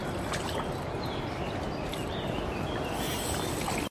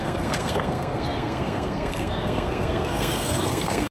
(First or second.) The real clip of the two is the first